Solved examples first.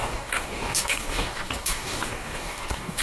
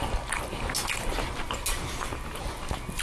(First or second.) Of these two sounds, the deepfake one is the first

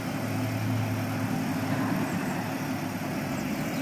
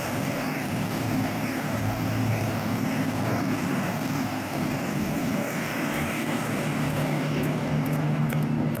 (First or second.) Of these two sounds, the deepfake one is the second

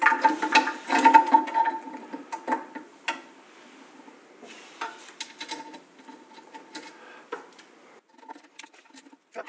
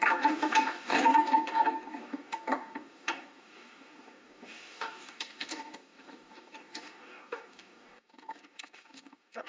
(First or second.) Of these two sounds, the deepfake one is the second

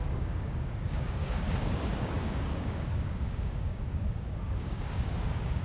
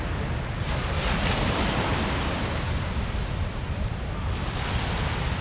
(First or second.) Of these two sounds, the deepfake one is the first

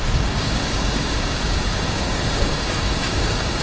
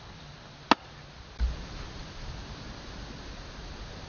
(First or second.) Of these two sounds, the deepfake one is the first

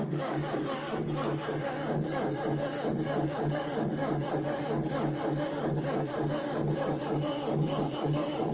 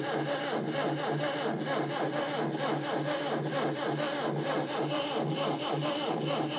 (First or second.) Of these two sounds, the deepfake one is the first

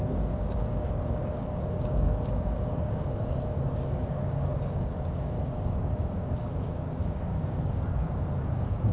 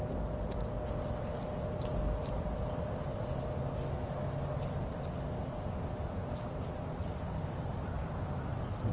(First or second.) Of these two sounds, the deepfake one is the first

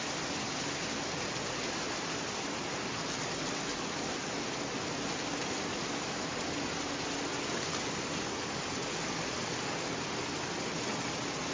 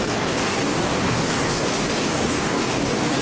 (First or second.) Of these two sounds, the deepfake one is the second